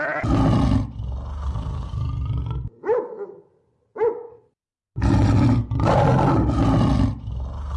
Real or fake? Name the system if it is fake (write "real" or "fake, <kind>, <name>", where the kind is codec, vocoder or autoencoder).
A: real